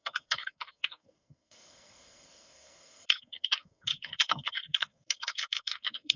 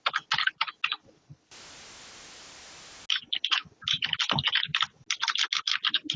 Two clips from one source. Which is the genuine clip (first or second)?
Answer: second